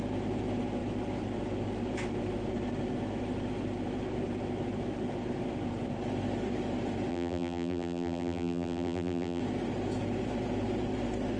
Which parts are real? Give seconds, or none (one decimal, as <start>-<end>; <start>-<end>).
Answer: 0.0-7.1; 9.4-11.4